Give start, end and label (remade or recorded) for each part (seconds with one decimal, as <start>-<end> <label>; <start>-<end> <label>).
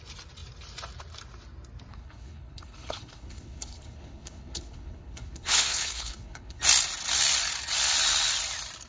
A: 0.0-1.9 recorded; 1.9-6.6 remade; 6.6-8.9 recorded